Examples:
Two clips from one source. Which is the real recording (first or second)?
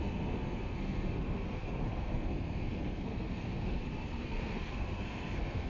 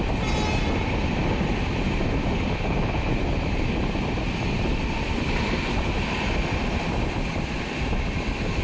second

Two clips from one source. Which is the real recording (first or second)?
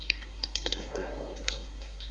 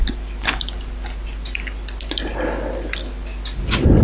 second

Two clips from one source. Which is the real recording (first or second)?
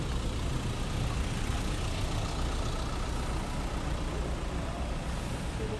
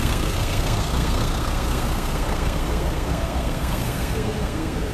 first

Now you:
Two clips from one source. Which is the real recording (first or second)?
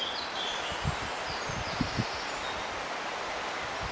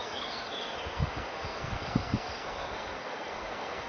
first